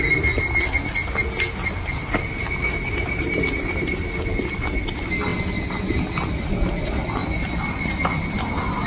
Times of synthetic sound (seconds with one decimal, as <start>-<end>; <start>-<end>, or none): 7.2-7.9